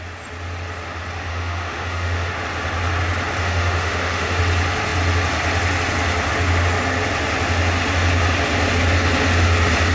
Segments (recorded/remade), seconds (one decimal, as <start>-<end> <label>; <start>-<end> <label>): 0.0-1.3 recorded; 1.3-2.3 remade; 2.3-3.4 recorded; 3.4-4.4 remade; 4.4-9.9 recorded